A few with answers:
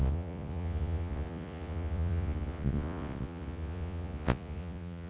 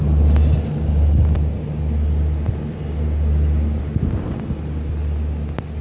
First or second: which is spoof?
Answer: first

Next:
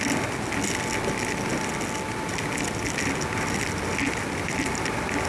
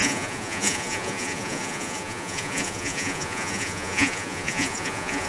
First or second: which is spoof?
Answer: second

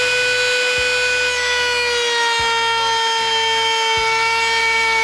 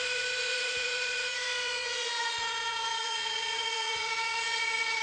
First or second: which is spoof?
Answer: second